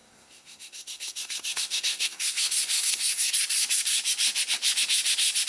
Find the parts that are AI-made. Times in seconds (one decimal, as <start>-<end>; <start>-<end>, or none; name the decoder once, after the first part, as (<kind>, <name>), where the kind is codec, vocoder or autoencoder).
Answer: 0.0-3.3 (codec, SNAC)